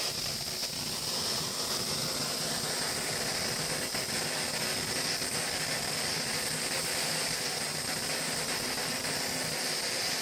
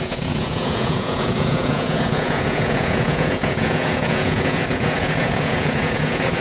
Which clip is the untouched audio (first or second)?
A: first